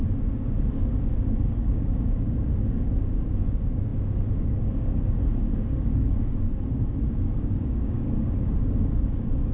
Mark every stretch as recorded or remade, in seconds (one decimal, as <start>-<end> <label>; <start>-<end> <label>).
0.0-9.5 remade